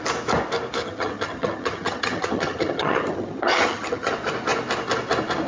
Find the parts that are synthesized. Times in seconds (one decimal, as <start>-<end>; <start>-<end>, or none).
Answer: 0.8-4.1